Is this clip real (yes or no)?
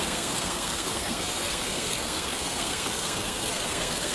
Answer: no